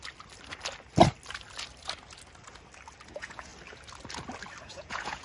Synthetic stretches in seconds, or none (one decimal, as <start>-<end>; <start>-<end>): 3.1-3.5; 4.6-5.2